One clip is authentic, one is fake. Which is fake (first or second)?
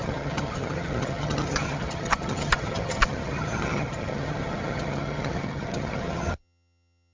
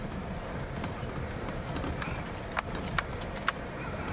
first